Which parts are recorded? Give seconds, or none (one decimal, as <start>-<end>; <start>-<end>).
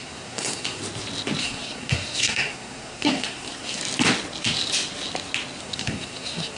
0.8-1.4; 3.8-5.6